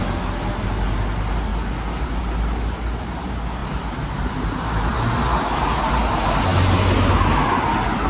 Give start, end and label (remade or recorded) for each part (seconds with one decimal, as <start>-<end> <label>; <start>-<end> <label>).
0.0-3.6 recorded; 3.6-4.9 remade; 4.9-8.1 recorded